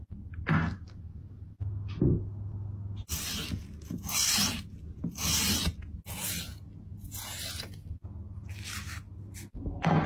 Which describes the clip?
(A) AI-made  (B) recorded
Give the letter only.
B